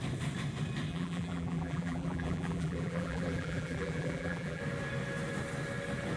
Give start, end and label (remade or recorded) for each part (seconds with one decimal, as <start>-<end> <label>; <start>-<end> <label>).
0.0-0.9 recorded; 0.9-4.6 remade; 4.6-6.2 recorded

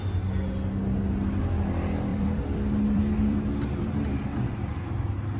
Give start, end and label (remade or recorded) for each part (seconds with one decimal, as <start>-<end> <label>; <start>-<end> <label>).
0.0-2.1 recorded; 2.1-4.8 remade; 4.8-5.4 recorded

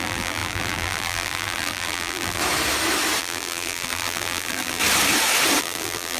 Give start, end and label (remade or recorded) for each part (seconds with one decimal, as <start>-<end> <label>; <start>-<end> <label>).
0.0-2.4 remade; 2.4-3.2 recorded; 3.2-4.8 remade; 4.8-5.6 recorded; 5.6-6.2 remade

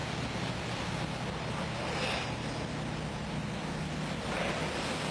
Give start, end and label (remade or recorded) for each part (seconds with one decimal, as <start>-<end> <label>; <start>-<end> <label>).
0.0-5.1 recorded